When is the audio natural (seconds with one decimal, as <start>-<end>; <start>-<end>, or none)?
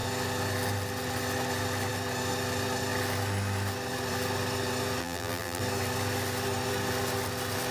0.0-5.0; 5.6-7.7